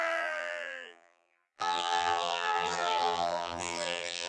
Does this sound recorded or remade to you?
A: remade